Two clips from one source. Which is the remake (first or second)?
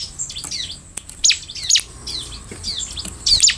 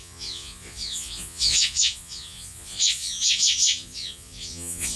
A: second